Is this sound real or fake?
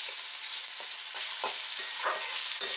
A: fake